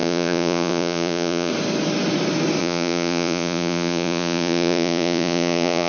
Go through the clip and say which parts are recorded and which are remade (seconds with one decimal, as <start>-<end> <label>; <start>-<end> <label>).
0.0-1.5 remade; 1.5-2.6 recorded; 2.6-5.9 remade